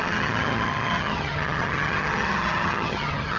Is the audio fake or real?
fake